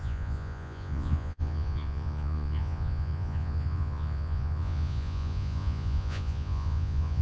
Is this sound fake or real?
fake